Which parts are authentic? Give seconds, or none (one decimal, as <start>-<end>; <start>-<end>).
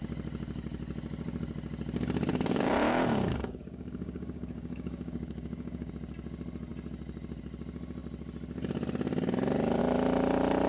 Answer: 0.0-2.3; 5.9-10.7